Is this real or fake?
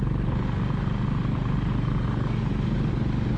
real